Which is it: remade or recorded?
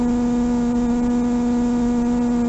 recorded